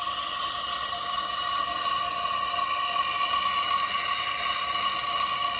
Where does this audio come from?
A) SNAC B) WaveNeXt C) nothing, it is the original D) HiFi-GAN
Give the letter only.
C